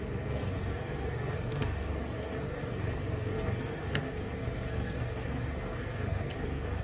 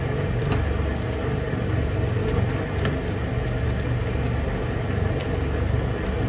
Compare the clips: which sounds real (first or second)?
second